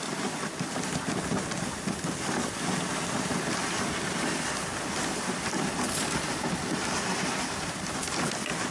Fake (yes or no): no